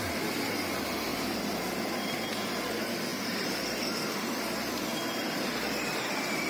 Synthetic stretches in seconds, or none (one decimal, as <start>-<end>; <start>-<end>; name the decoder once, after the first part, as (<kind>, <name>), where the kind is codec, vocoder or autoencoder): 1.1-2.7 (vocoder, BigVGAN v2); 3.1-6.0